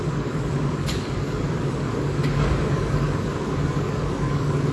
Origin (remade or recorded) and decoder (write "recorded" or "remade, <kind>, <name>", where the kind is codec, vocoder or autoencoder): remade, codec, DAC